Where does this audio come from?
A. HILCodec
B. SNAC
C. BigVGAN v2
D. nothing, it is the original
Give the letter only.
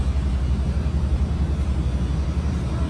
D